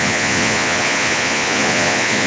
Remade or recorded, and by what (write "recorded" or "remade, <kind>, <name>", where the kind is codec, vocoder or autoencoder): remade, vocoder, Vocos